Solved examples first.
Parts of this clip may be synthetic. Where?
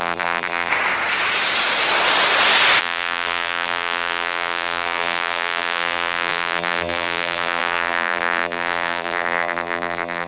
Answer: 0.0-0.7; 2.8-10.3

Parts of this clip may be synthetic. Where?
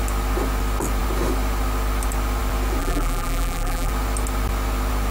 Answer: 2.8-3.9